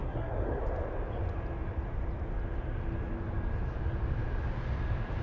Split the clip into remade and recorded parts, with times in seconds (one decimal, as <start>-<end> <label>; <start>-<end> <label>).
0.0-0.6 remade; 0.6-5.2 recorded